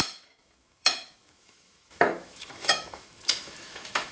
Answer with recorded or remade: remade